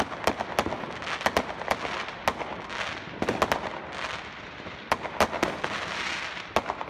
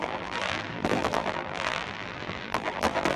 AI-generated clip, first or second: second